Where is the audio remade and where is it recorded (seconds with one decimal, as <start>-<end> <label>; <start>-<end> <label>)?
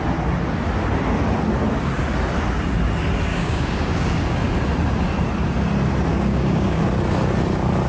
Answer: 0.0-3.3 recorded; 3.3-4.2 remade; 4.2-6.1 recorded; 6.1-6.8 remade; 6.8-7.9 recorded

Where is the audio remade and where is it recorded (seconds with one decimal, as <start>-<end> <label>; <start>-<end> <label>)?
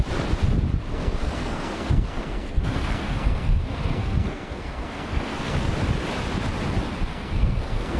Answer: 0.0-0.9 recorded; 0.9-5.7 remade; 5.7-7.1 recorded; 7.1-8.0 remade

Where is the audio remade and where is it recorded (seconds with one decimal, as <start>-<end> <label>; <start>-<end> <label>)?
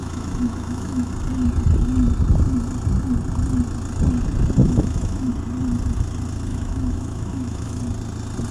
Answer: 0.0-1.1 remade; 1.1-4.6 recorded; 4.6-5.3 remade; 5.3-6.5 recorded; 6.5-7.8 remade; 7.8-8.5 recorded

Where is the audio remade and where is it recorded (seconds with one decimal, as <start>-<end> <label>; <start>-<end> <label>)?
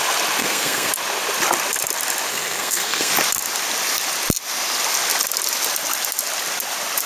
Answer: 0.0-0.4 recorded; 0.4-0.9 remade; 0.9-2.3 recorded; 2.3-3.1 remade; 3.1-7.1 recorded